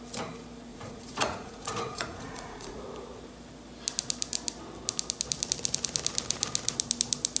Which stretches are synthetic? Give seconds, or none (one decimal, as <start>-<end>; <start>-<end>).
0.7-2.8